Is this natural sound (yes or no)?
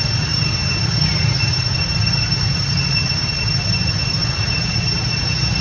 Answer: yes